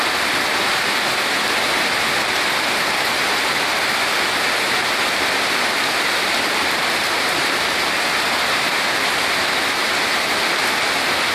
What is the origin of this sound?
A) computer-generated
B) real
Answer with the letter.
B